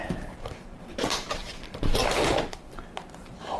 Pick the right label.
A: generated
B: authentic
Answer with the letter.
A